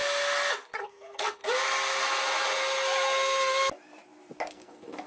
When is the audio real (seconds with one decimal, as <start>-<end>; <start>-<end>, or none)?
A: 0.0-0.8; 1.4-4.5